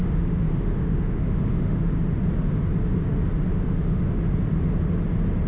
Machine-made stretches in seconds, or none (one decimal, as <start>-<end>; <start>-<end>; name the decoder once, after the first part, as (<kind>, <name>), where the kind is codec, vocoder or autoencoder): 0.0-1.9 (autoencoder, DAC-VAE); 3.5-4.2